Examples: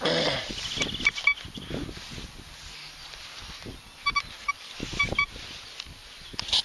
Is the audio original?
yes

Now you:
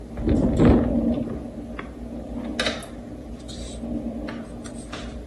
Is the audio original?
yes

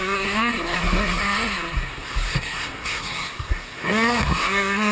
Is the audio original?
no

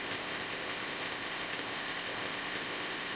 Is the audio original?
no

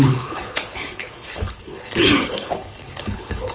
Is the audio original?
no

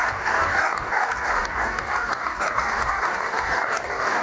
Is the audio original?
no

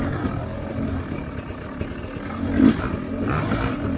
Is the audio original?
yes